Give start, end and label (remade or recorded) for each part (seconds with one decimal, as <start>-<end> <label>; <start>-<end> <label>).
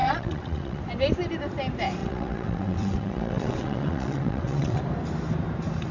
0.0-0.8 remade; 0.8-2.0 recorded; 2.0-4.8 remade; 4.8-5.9 recorded